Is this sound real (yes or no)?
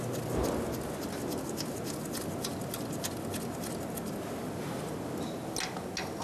yes